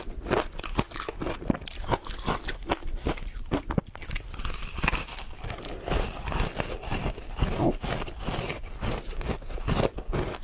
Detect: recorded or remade recorded